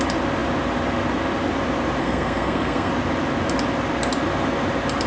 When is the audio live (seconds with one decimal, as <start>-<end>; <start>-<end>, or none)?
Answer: 0.0-2.0; 2.9-5.1

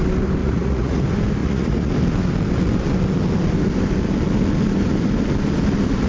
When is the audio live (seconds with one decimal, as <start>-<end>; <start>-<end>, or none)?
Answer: 0.0-0.4; 1.0-1.4; 1.9-6.1

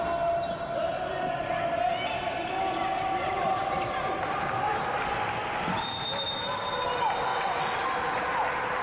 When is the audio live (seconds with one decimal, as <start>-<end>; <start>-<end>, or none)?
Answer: 0.0-7.3; 7.8-8.8

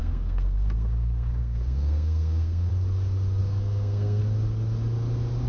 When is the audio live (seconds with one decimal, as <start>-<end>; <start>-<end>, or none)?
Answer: 2.7-3.4; 4.2-5.5